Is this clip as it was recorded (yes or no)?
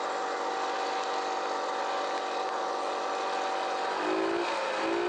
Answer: yes